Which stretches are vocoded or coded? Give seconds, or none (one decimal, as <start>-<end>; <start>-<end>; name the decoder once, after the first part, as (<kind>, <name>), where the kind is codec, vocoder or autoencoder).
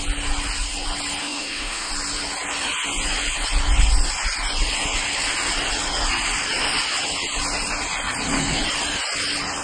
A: 1.2-1.9 (autoencoder, DAC-VAE)